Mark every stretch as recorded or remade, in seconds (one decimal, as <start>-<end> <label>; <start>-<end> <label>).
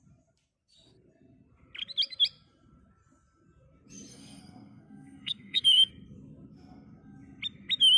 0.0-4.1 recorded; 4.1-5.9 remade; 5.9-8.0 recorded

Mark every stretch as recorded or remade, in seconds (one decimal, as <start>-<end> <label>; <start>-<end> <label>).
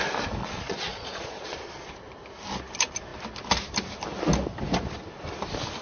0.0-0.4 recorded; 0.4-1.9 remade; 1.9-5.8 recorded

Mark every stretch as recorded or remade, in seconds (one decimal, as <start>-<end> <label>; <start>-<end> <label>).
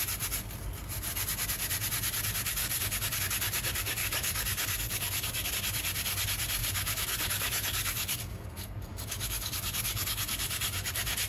0.0-2.6 recorded; 2.6-3.2 remade; 3.2-4.0 recorded; 4.0-5.5 remade; 5.5-6.6 recorded; 6.6-10.9 remade; 10.9-11.3 recorded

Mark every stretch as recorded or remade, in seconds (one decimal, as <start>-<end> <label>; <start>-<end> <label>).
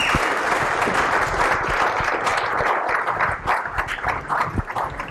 0.0-5.1 recorded